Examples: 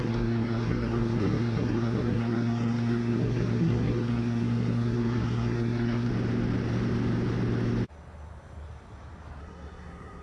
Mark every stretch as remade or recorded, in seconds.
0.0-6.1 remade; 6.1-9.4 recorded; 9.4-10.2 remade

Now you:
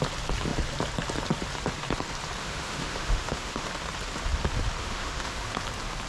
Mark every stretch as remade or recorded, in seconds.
0.0-2.4 recorded; 2.4-3.7 remade; 3.7-4.8 recorded; 4.8-5.6 remade; 5.6-6.1 recorded

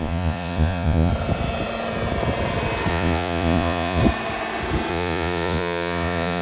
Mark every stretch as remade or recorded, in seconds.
0.0-1.1 remade; 1.1-2.9 recorded; 2.9-4.0 remade; 4.0-4.9 recorded; 4.9-6.4 remade

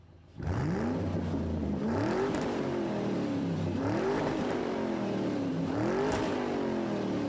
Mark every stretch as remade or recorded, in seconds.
0.0-1.6 recorded; 1.6-5.7 remade; 5.7-7.3 recorded

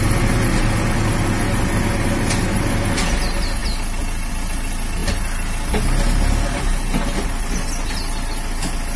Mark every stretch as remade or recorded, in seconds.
0.0-9.0 recorded

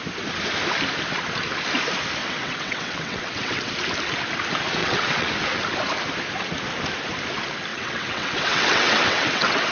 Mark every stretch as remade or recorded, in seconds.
0.0-2.2 recorded; 2.2-3.7 remade; 3.7-4.8 recorded; 4.8-5.3 remade; 5.3-7.7 recorded; 7.7-9.7 remade